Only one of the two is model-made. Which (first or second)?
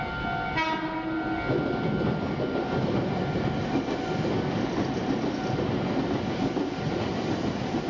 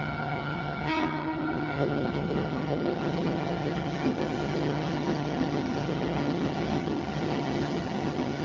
second